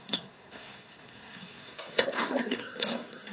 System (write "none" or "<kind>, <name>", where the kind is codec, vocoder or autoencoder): codec, SNAC